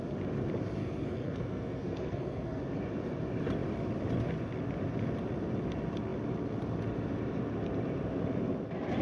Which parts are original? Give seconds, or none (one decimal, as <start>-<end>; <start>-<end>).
0.0-0.8; 2.6-9.0